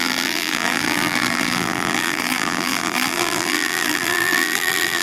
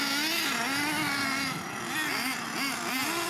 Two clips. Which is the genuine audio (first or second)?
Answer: second